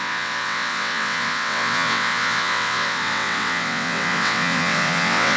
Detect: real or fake fake